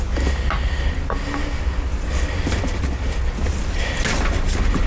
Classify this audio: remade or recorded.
recorded